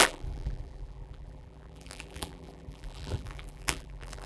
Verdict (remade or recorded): remade